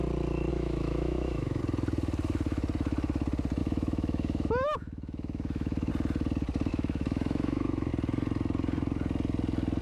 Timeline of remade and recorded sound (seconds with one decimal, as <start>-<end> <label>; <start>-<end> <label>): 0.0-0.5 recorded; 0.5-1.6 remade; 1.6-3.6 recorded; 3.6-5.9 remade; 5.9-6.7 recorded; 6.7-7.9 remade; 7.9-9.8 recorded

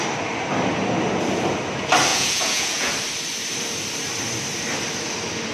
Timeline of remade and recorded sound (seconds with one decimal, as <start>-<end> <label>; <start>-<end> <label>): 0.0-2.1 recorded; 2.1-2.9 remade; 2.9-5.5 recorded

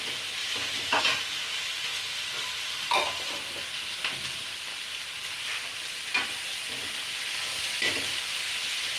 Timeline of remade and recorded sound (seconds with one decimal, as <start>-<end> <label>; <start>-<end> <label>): 0.0-0.4 recorded; 0.4-1.0 remade; 1.0-9.0 recorded

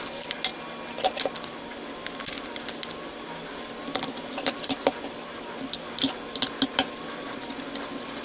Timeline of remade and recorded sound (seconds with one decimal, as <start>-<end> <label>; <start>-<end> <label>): 0.0-8.2 recorded